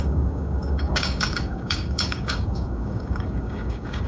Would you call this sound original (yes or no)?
no